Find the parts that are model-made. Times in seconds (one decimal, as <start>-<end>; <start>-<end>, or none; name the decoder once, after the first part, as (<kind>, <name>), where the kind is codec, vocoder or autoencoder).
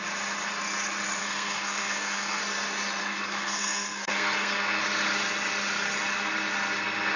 1.2-2.4 (codec, SNAC); 3.0-4.8